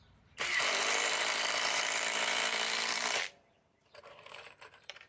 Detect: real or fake fake